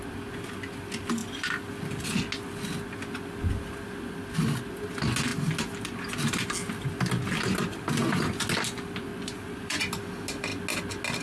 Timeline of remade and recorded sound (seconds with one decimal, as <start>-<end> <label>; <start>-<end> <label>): 0.0-9.1 recorded; 9.1-9.8 remade; 9.8-11.2 recorded